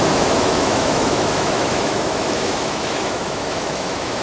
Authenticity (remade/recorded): remade